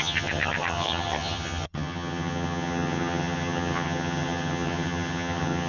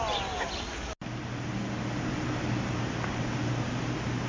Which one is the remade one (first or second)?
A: first